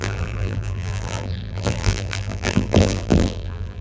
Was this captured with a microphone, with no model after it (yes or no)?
no